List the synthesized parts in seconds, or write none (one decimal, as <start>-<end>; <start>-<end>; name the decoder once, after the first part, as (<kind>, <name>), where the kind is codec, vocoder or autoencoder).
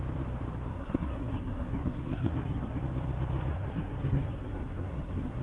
0.7-2.8 (codec, SNAC); 3.5-5.4